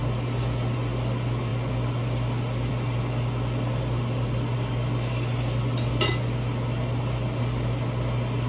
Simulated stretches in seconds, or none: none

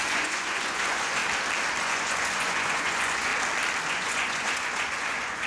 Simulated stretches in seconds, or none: 0.0-1.2 (vocoder, Vocos); 1.8-3.3; 3.9-5.5

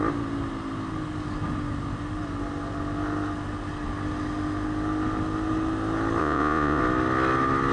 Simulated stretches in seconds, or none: 6.2-6.8 (vocoder, Vocos)

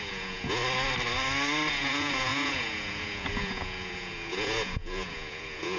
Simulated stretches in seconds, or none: 0.0-0.6 (vocoder, Vocos); 1.7-5.8

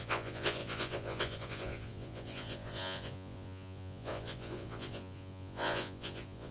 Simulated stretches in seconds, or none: 0.0-6.5 (vocoder, Vocos)

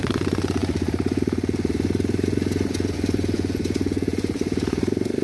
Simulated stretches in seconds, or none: 0.0-5.2 (vocoder, Vocos)

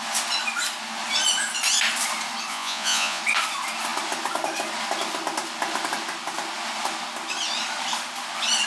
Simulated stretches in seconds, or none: 2.5-3.2 (vocoder, Vocos)